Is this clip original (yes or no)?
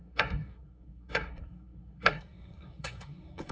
no